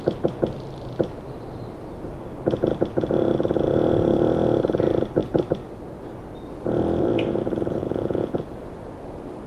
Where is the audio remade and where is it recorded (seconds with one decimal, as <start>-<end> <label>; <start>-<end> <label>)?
0.0-7.8 recorded; 7.8-8.4 remade; 8.4-9.5 recorded